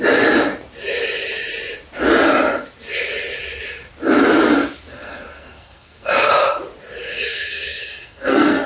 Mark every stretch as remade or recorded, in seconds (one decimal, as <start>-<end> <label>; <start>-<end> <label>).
0.0-4.9 recorded; 4.9-6.3 remade; 6.3-7.0 recorded; 7.0-8.7 remade